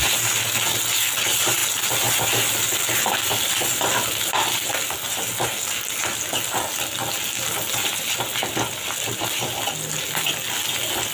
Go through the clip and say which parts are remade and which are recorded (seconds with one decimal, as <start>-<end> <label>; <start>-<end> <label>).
0.0-11.1 recorded